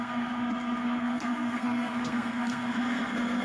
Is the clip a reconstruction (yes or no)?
yes